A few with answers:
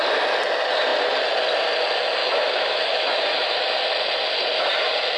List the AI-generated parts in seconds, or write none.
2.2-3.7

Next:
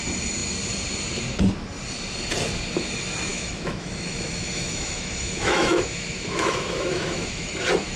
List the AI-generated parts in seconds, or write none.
3.3-7.5

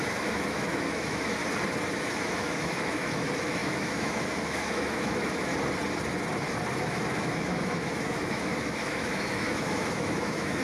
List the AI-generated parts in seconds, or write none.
0.0-1.4; 1.9-5.5; 6.7-10.6